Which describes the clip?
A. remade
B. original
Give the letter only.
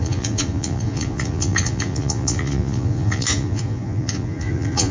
A